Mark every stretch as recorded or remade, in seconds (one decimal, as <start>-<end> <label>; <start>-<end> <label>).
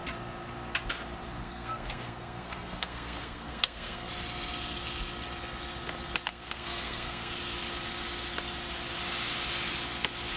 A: 0.0-1.4 recorded; 1.4-4.1 remade; 4.1-6.3 recorded; 6.3-7.4 remade; 7.4-10.4 recorded